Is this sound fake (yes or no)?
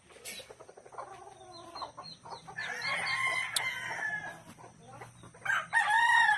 no